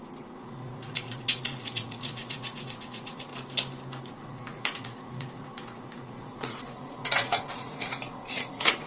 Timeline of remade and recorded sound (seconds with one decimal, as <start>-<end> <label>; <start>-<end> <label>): 0.0-3.3 remade; 3.3-4.1 recorded; 4.1-8.9 remade